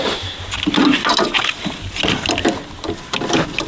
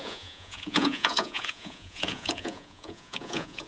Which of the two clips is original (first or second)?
first